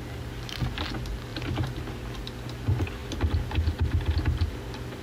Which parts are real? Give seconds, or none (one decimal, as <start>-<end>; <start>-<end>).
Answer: 0.0-5.0